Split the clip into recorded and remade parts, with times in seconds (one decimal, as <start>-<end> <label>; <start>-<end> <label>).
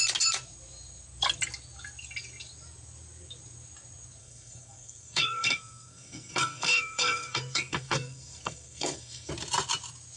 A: 0.0-4.2 recorded; 4.2-9.3 remade; 9.3-10.2 recorded